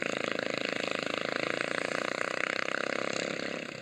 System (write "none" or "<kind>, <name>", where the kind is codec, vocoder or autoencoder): none